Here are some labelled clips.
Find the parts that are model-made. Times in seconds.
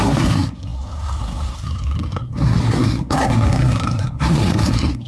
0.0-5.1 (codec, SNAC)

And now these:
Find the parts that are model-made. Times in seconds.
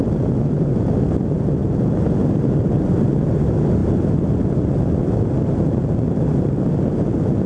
none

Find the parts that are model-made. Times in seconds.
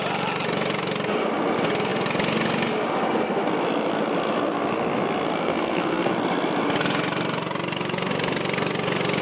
5.4-6.1 (codec, SNAC)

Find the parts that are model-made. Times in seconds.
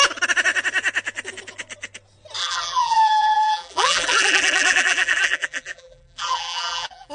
2.4-7.1 (vocoder, BigVGAN v2)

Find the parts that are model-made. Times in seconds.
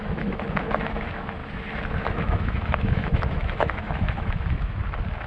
0.0-1.4 (autoencoder, DAC-VAE); 2.1-4.8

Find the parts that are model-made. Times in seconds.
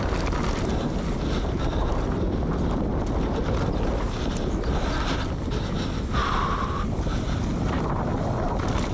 none